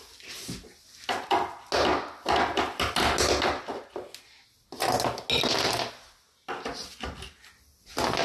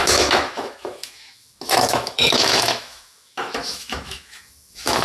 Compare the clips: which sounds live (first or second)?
first